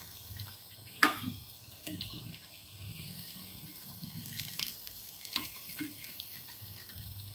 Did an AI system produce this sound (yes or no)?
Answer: yes